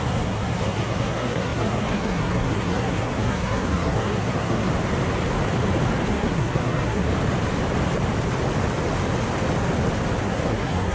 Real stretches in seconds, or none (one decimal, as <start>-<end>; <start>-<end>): 4.7-6.1; 7.1-10.2